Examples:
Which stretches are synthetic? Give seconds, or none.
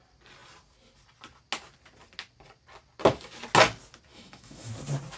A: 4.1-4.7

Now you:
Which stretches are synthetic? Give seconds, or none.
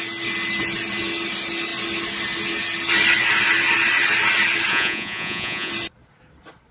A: 4.7-5.7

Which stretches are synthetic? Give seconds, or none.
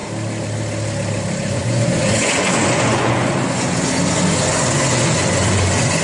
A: 1.5-6.0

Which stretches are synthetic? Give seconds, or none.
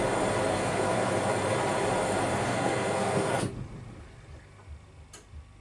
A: 0.5-1.1; 2.3-3.4